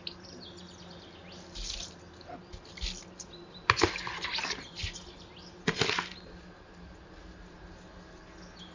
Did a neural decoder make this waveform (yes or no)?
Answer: no